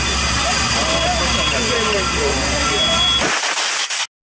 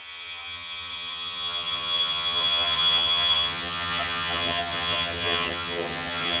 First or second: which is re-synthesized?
second